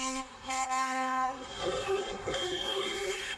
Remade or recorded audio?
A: remade